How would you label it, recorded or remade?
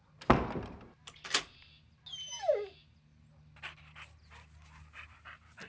recorded